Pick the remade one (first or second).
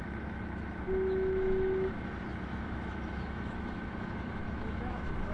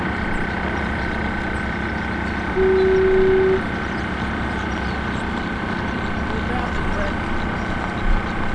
first